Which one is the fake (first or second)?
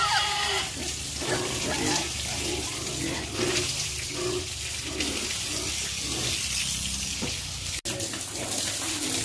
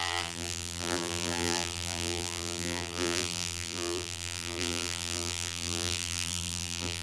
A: second